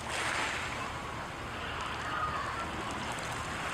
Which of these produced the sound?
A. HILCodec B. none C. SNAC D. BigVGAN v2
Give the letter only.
B